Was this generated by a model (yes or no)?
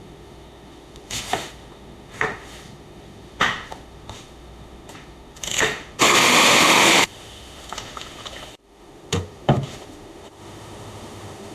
yes